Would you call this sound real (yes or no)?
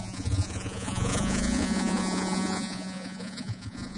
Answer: no